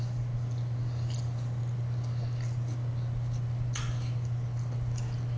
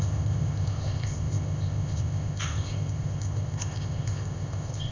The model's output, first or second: second